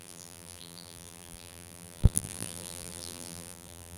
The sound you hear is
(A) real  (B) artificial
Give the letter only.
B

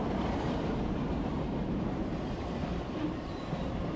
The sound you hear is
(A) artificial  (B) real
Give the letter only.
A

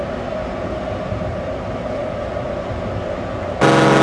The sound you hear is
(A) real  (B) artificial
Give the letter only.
A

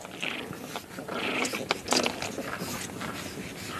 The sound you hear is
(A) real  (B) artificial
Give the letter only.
A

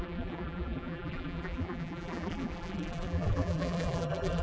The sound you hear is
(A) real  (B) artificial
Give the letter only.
B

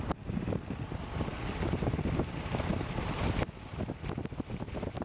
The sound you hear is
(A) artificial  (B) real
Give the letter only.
B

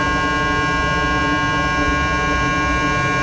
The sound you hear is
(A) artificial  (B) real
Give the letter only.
B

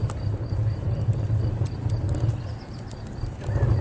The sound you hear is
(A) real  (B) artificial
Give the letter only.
A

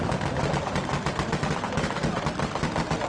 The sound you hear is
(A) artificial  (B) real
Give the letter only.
B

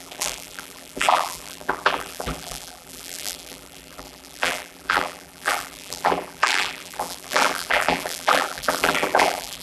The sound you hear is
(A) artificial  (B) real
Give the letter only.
A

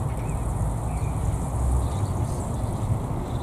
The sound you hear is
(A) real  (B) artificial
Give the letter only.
A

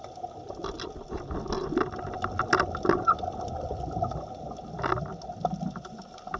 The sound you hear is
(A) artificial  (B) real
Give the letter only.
B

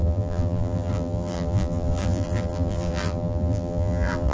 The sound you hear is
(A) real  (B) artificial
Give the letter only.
B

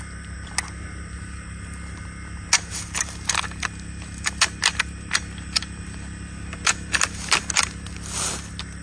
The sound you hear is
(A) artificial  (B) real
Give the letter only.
B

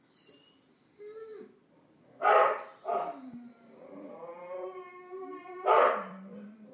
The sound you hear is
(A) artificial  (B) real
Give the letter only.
A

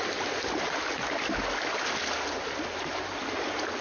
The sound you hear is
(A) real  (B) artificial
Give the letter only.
A